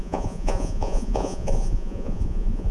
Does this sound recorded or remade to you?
remade